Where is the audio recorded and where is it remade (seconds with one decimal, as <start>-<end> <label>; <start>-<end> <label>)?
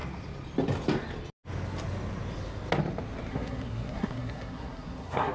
0.0-3.3 recorded; 3.3-5.3 remade